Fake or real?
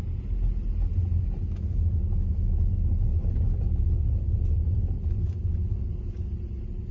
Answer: real